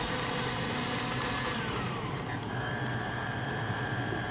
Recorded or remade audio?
remade